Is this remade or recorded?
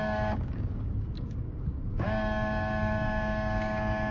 remade